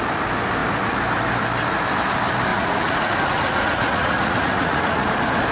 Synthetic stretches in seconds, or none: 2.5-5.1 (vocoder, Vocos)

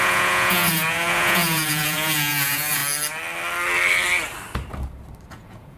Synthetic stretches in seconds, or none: 0.0-2.8 (vocoder, Vocos); 5.3-5.8

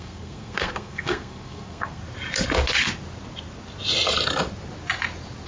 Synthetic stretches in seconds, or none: 0.0-2.0 (codec, SNAC)

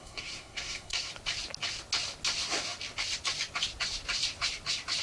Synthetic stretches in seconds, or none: 0.0-1.1 (codec, SNAC)

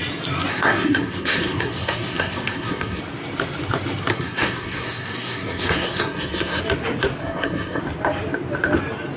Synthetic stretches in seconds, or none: 0.5-3.0 (codec, SNAC); 4.1-6.6; 7.2-7.8

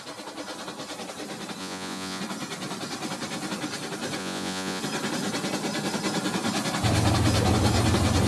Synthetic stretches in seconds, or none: 1.6-2.2 (vocoder, Vocos); 4.2-4.8

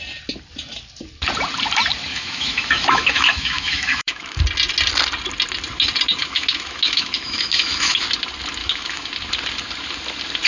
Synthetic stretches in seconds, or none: 2.1-4.4 (autoencoder, DAC-VAE); 6.2-8.0; 8.6-9.1

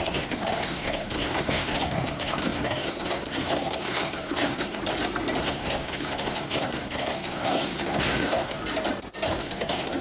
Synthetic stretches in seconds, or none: 0.0-4.8 (codec, SNAC); 5.4-8.6; 9.4-10.0